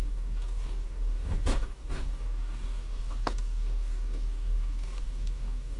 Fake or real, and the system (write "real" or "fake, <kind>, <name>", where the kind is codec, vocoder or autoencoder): fake, codec, DAC